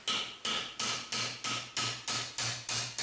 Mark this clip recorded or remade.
recorded